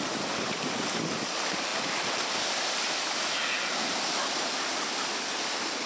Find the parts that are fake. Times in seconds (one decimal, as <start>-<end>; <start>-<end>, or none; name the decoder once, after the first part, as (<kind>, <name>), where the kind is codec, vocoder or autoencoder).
none